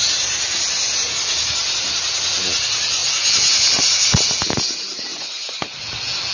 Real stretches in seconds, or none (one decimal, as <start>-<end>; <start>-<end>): 0.0-5.1; 5.8-6.3